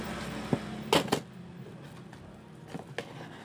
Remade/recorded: recorded